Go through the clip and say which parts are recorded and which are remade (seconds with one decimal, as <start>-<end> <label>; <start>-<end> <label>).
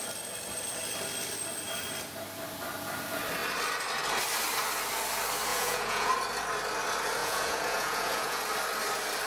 0.0-5.5 recorded; 5.5-6.1 remade; 6.1-7.2 recorded; 7.2-8.4 remade; 8.4-9.3 recorded